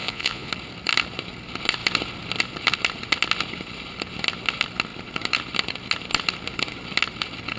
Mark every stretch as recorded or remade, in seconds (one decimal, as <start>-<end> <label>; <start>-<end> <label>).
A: 0.0-0.5 remade; 0.5-7.6 recorded